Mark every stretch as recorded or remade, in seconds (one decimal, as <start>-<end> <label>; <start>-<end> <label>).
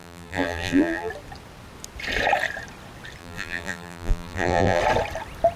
0.0-1.1 remade; 1.1-3.2 recorded; 3.2-4.8 remade; 4.8-5.6 recorded